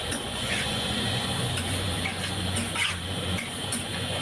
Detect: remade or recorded remade